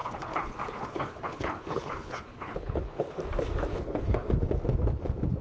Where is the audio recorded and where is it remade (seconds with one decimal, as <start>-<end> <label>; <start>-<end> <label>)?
0.0-3.2 remade; 3.2-3.7 recorded; 3.7-4.3 remade; 4.3-5.4 recorded